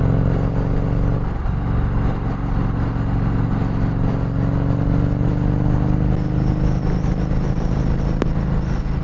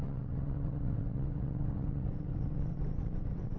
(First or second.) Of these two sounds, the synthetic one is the second